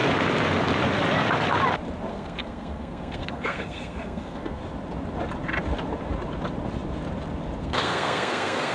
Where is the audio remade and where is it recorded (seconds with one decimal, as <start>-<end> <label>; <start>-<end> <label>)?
0.0-2.1 recorded; 2.1-4.6 remade; 4.6-7.6 recorded; 7.6-8.7 remade